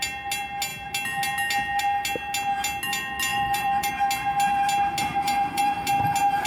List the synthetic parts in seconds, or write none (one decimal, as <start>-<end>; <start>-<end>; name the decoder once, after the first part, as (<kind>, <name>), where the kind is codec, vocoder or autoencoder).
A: 3.3-3.9 (vocoder, BigVGAN v2); 5.0-5.6